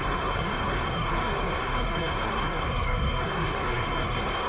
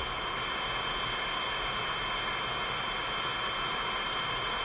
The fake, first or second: first